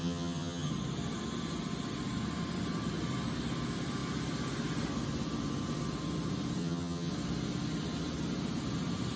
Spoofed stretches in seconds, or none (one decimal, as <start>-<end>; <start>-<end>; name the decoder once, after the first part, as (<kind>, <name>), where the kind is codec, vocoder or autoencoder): 0.0-0.7 (vocoder, HiFi-GAN); 6.6-7.1